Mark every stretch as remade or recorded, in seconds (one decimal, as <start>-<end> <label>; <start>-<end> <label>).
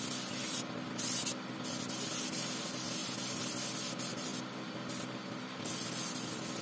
0.0-6.6 recorded